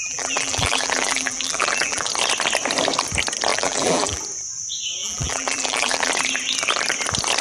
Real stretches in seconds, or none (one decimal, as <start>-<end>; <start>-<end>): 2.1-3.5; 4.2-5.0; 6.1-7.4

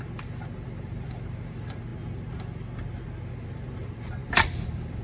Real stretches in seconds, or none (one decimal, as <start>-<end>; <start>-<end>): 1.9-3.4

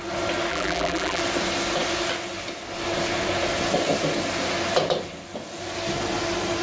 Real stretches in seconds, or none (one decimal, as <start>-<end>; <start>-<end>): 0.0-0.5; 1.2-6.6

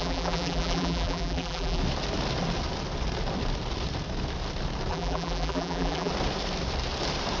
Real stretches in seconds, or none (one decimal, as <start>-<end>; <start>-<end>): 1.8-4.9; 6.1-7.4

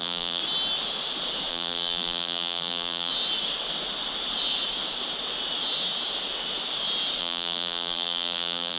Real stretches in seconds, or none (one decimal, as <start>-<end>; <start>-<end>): 0.4-1.5; 3.1-7.2

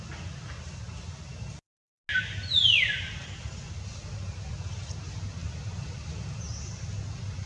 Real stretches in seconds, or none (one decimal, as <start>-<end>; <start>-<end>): 0.0-2.1; 3.7-5.4; 6.4-7.5

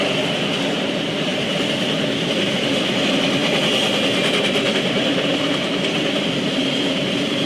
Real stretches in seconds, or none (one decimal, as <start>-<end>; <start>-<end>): none

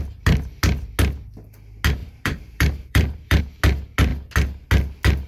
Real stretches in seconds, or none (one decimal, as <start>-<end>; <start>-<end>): 0.0-2.0; 3.4-5.3